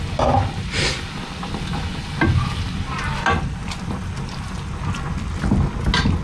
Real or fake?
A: real